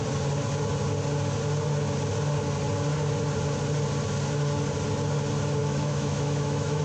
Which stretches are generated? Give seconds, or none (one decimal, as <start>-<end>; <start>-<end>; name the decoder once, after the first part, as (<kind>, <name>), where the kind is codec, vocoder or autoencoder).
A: 5.6-6.8 (autoencoder, DAC-VAE)